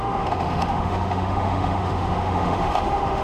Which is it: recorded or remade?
remade